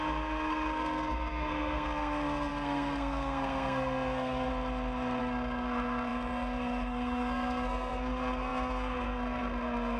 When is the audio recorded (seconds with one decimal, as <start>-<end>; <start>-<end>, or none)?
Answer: 4.5-5.2